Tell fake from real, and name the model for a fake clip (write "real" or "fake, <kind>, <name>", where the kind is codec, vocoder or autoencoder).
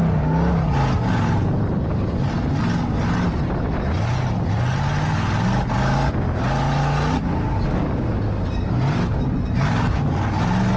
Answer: real